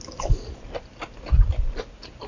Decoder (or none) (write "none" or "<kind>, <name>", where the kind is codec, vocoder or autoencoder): none